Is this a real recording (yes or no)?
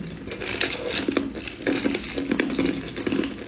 yes